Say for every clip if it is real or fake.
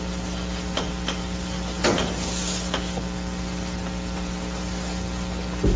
real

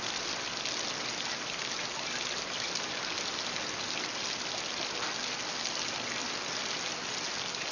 real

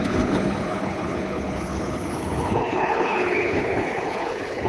fake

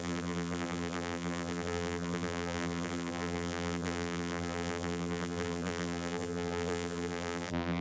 fake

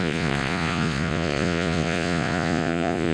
fake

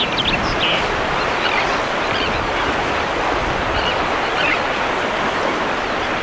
real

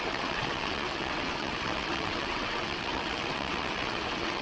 fake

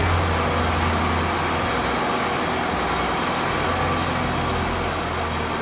real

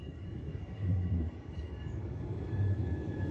fake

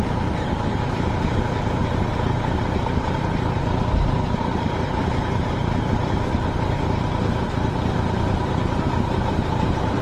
fake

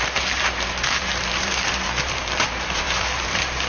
fake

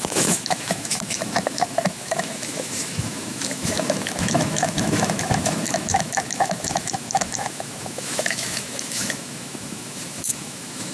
fake